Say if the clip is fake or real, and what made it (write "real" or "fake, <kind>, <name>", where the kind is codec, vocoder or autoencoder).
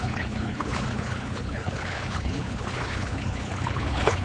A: fake, codec, HILCodec